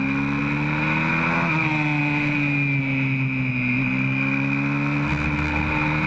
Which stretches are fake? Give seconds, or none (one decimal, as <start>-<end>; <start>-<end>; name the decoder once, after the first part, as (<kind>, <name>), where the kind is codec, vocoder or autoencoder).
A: none